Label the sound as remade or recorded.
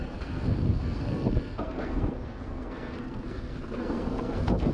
remade